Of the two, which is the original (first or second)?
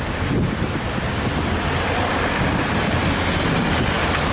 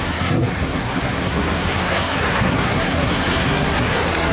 first